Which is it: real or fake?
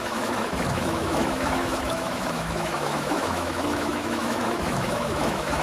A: fake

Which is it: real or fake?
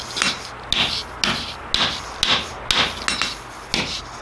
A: real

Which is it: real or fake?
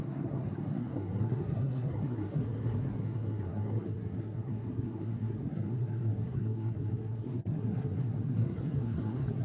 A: fake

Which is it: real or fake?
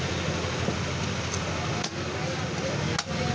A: real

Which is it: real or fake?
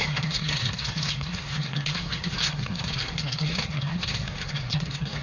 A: fake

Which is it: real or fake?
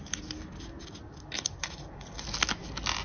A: real